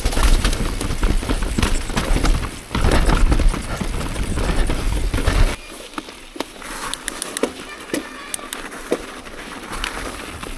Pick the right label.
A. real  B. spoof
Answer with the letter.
A